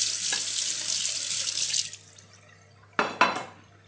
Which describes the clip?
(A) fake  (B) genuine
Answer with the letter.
B